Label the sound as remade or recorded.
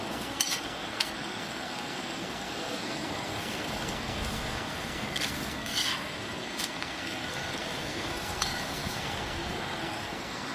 remade